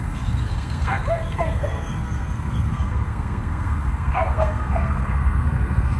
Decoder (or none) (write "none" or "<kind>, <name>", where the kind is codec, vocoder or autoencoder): codec, SNAC